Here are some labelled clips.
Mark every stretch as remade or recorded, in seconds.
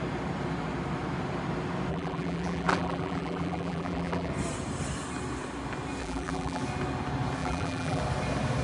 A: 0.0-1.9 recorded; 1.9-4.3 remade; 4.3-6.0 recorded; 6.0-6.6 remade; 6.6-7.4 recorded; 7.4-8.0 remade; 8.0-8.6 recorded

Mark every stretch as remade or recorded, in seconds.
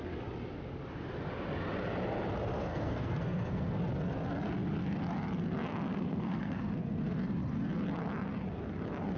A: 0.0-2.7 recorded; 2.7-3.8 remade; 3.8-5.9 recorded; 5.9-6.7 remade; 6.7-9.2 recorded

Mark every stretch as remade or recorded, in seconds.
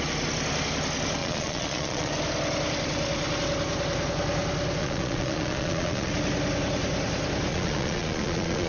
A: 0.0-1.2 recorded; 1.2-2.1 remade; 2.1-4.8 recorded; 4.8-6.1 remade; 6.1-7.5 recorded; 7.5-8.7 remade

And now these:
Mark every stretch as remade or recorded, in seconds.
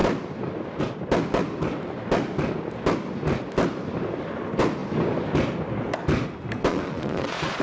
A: 0.0-6.7 recorded; 6.7-7.6 remade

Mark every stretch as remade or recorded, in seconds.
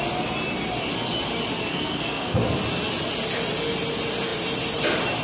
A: 0.0-1.6 recorded; 1.6-2.4 remade; 2.4-5.2 recorded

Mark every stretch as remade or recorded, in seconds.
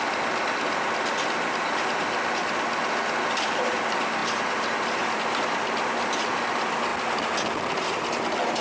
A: 0.0-2.8 recorded; 2.8-3.6 remade; 3.6-4.2 recorded; 4.2-5.2 remade; 5.2-8.6 recorded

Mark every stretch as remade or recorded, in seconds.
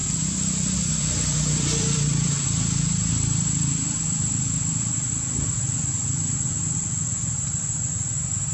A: 0.0-5.1 remade; 5.1-8.5 recorded